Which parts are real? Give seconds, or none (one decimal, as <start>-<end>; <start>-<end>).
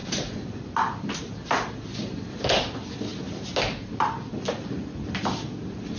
2.4-6.0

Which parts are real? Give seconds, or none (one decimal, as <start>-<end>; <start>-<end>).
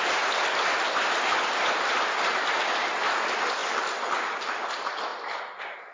0.0-5.9